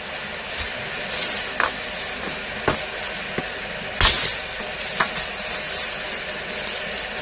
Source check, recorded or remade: recorded